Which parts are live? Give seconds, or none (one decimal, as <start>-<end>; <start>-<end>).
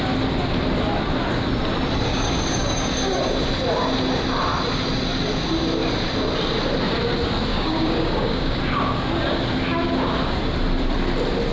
0.0-2.1; 3.2-7.5; 8.6-11.5